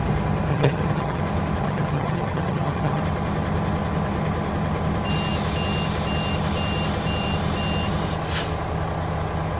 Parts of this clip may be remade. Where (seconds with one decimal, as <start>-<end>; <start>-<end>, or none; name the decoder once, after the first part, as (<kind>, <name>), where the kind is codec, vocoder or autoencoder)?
0.5-1.2 (vocoder, HiFi-GAN); 1.6-3.0